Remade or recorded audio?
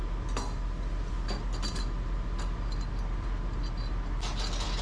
recorded